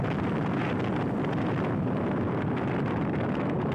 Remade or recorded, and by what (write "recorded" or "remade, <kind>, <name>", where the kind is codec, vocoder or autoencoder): recorded